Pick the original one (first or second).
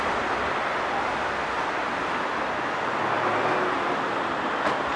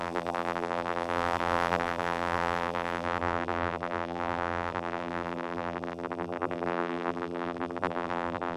first